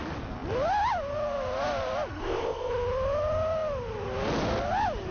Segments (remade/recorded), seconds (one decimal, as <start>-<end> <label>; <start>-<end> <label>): 0.0-2.2 recorded; 2.2-2.7 remade; 2.7-5.1 recorded